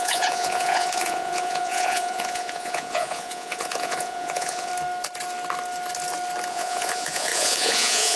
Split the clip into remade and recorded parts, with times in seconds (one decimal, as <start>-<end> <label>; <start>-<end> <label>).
0.0-4.7 remade; 4.7-6.5 recorded; 6.5-8.2 remade